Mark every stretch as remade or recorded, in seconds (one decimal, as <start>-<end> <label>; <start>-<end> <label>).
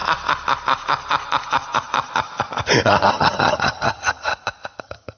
0.0-3.1 recorded; 3.1-4.3 remade; 4.3-4.8 recorded; 4.8-5.2 remade